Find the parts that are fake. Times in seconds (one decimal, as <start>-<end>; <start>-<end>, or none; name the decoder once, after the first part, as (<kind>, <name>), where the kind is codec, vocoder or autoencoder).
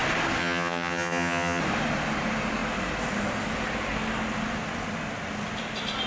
0.4-1.6 (vocoder, HiFi-GAN)